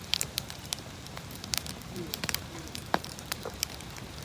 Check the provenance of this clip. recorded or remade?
remade